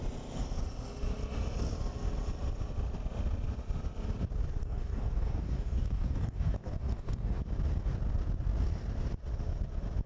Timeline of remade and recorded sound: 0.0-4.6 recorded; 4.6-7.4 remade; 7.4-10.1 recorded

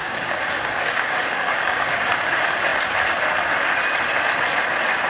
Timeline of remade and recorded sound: 0.0-2.2 remade; 2.2-5.1 recorded

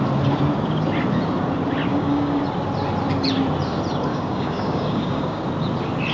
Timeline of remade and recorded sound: 0.0-1.9 recorded; 1.9-2.4 remade; 2.4-4.1 recorded; 4.1-5.4 remade; 5.4-6.1 recorded

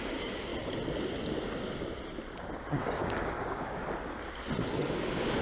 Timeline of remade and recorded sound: 0.0-0.5 remade; 0.5-2.7 recorded; 2.7-3.8 remade; 3.8-4.8 recorded; 4.8-5.4 remade

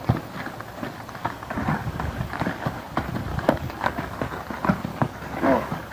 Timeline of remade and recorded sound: 0.0-1.2 recorded; 1.2-2.8 remade; 2.8-3.3 recorded; 3.3-4.2 remade; 4.2-4.9 recorded; 4.9-5.9 remade